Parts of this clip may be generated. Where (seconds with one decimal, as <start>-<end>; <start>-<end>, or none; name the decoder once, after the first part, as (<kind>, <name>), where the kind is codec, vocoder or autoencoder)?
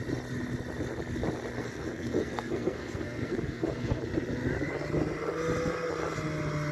1.6-4.0 (codec, SNAC)